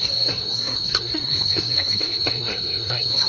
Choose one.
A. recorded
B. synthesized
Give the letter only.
B